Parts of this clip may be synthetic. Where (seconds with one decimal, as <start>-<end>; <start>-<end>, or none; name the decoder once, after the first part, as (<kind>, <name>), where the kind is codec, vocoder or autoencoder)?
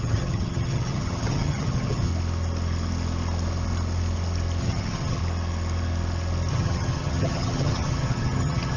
0.0-2.1 (vocoder, HiFi-GAN); 4.6-5.2; 6.5-8.8